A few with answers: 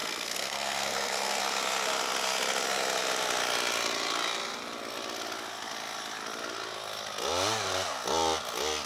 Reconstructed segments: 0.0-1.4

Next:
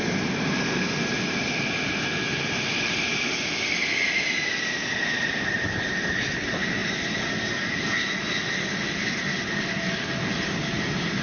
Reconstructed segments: none

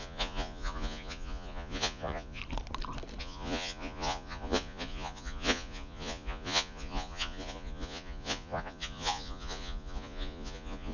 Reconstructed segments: 0.0-2.4; 3.2-10.9

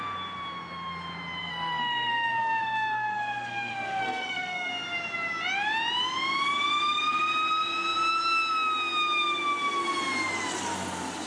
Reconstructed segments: 1.4-4.7

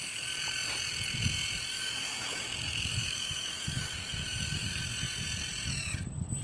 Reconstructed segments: 1.7-4.8